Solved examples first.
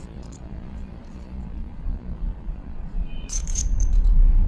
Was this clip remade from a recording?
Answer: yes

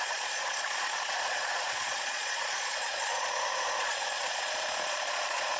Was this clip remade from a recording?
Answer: yes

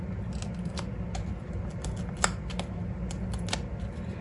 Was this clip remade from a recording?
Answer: no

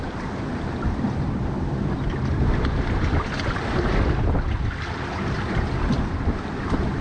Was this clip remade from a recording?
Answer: no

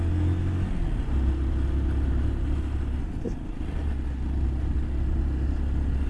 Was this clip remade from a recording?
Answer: no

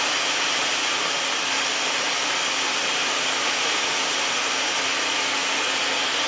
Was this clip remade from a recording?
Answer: no